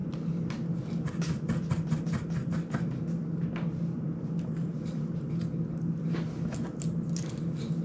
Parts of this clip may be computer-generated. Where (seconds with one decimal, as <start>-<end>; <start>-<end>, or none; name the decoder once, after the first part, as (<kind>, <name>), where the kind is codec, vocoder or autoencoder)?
none